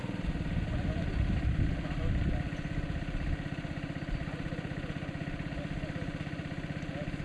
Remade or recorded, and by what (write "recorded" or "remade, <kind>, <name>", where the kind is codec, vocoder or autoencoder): recorded